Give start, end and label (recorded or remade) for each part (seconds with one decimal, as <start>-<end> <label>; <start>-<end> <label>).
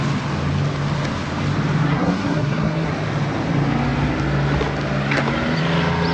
0.0-1.9 recorded; 1.9-2.9 remade; 2.9-6.1 recorded